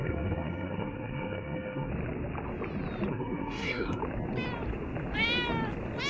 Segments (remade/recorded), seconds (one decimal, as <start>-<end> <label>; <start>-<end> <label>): 0.0-1.9 remade; 1.9-3.1 recorded; 3.1-4.0 remade; 4.0-6.1 recorded